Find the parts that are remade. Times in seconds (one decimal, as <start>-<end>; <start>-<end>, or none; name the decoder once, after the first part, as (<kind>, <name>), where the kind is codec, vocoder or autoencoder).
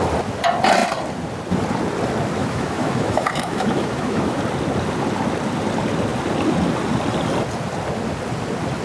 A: 2.4-4.4 (autoencoder, DAC-VAE)